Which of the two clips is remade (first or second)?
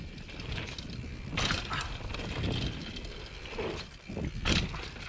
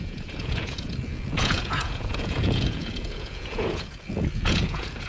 second